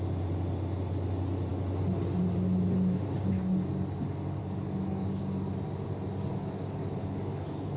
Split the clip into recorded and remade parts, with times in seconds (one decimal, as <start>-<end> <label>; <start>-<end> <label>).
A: 0.0-4.4 recorded; 4.4-5.2 remade; 5.2-6.3 recorded; 6.3-7.8 remade